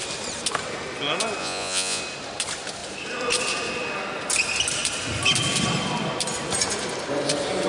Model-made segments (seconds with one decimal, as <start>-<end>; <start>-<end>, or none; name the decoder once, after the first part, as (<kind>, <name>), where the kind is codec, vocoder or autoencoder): 1.4-2.0 (vocoder, Vocos)